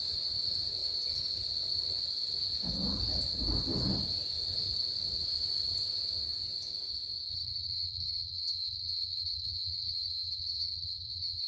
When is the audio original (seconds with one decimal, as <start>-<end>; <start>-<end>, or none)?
0.0-7.3